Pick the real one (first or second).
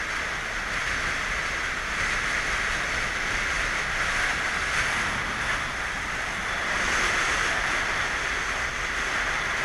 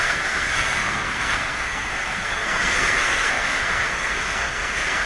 first